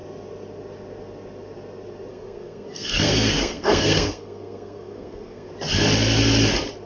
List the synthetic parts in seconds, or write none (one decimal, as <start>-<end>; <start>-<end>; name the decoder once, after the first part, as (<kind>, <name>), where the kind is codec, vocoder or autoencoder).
2.1-5.5 (codec, SNAC)